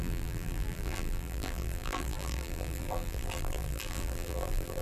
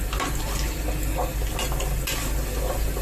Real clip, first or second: second